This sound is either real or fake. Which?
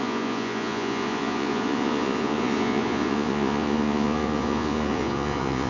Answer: fake